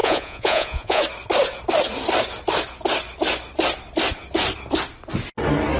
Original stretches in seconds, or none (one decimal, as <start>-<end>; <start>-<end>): 1.0-5.8